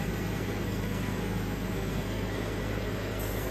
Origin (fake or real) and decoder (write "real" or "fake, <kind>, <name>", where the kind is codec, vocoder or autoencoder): fake, codec, SNAC